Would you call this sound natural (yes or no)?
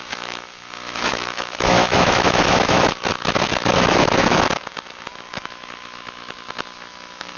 no